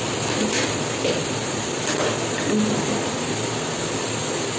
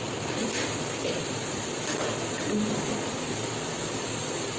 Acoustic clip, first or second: first